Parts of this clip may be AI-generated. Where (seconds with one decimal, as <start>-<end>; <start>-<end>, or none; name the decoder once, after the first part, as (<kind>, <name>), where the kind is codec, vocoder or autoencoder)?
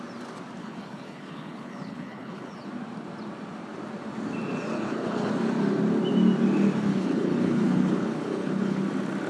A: 0.6-2.7 (codec, HILCodec); 4.7-5.3; 6.9-8.8